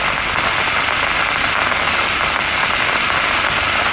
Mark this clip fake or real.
real